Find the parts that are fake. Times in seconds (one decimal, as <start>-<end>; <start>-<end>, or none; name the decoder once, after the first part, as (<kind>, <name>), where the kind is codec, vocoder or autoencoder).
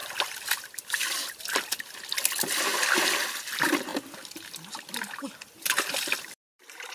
0.0-0.5 (vocoder, BigVGAN v2); 3.9-6.9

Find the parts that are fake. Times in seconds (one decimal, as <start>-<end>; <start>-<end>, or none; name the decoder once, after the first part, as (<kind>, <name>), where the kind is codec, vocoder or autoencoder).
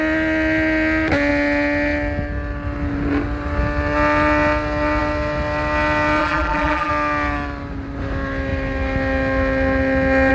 6.2-6.9 (vocoder, BigVGAN v2)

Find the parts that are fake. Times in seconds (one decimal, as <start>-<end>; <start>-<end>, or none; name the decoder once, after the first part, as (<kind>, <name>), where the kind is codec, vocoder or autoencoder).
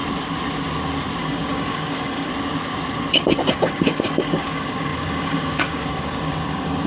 1.2-2.3 (codec, DAC); 3.5-6.9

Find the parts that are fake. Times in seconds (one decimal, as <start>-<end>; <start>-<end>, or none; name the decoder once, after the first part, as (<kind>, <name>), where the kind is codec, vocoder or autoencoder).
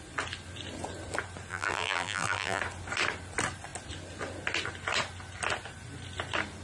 1.5-2.6 (vocoder, BigVGAN v2)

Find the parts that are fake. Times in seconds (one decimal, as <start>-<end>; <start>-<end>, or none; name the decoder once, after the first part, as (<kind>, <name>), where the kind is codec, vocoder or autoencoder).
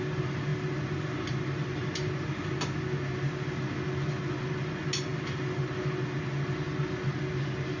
none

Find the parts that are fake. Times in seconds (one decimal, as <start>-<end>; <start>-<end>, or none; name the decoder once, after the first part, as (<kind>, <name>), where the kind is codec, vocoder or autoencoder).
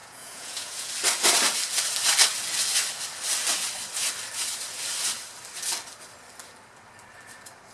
0.0-0.9 (vocoder, Vocos)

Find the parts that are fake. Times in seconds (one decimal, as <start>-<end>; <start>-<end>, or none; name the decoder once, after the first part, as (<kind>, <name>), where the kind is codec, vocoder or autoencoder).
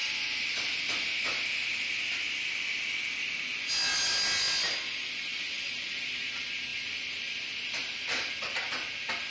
0.0-0.8 (vocoder, BigVGAN v2); 5.3-5.9; 6.7-8.3